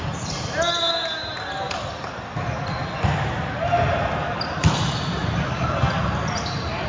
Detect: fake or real real